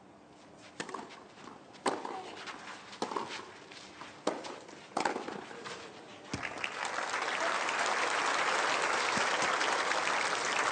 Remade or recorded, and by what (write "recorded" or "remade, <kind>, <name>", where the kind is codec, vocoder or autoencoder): recorded